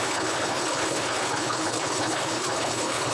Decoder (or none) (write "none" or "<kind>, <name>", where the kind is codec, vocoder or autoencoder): codec, HILCodec